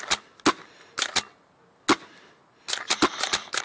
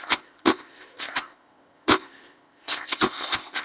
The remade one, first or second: second